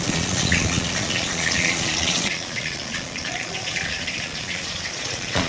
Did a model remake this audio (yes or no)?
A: yes